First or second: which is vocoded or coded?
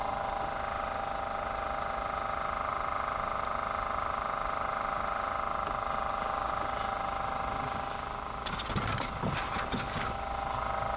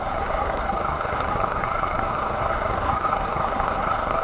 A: second